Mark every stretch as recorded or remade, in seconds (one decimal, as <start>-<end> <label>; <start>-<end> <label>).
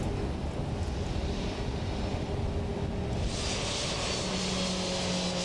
0.0-5.4 recorded